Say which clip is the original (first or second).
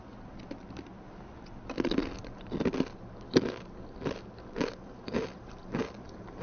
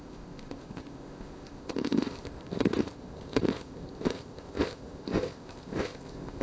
first